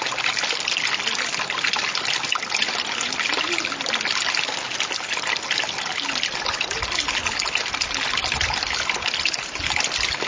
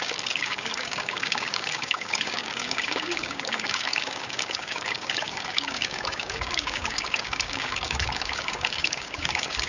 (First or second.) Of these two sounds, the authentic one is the first